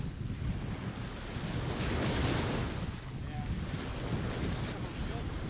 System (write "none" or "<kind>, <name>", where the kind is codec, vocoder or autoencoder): none